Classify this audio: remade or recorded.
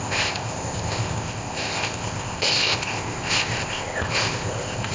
remade